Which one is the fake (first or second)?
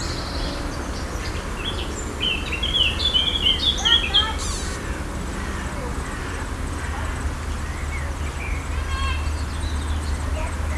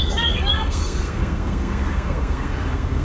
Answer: second